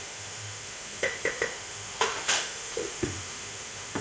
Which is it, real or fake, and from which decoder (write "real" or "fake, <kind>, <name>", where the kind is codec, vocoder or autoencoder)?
fake, autoencoder, DAC-VAE